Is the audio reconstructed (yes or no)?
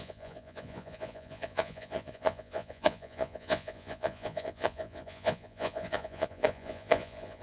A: yes